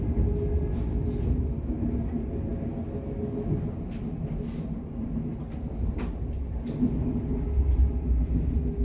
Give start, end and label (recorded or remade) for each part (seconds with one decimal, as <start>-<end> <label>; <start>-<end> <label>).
0.0-8.8 recorded